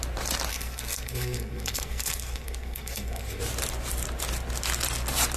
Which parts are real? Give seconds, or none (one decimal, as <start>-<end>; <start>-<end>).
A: 0.0-0.5; 3.4-5.4